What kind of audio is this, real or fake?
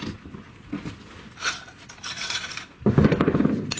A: real